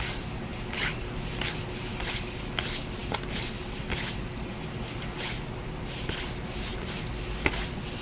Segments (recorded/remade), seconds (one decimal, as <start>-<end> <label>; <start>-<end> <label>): 0.0-8.0 recorded